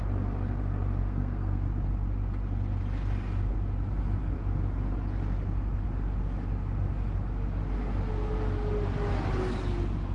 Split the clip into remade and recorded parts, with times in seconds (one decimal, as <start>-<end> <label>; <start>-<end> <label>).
0.0-1.0 recorded; 1.0-1.7 remade; 1.7-10.1 recorded